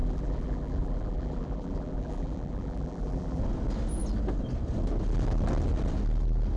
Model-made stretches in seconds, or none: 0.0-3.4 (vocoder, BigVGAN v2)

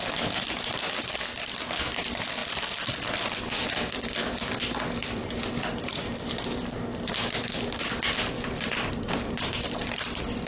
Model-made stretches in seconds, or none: none

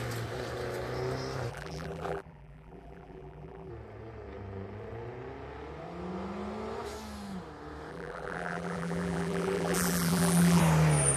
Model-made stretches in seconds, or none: 1.5-3.7 (vocoder, BigVGAN v2); 7.9-10.6